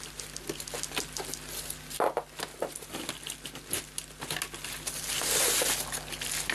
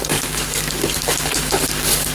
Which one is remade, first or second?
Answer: second